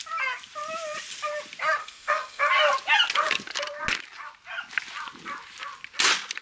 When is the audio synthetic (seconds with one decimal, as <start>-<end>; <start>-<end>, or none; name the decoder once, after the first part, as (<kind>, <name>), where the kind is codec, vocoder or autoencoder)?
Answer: 1.8-2.5 (codec, SNAC)